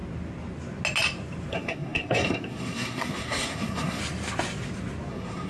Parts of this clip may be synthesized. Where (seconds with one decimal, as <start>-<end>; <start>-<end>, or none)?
1.5-4.0; 5.1-5.5